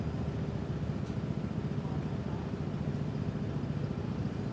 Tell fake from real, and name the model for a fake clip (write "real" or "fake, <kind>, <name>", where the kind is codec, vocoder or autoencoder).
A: real